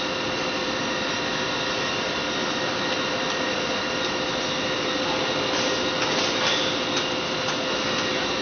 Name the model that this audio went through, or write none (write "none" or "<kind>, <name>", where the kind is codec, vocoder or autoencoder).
none